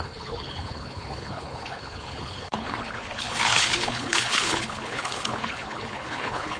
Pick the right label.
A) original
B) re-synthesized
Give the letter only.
B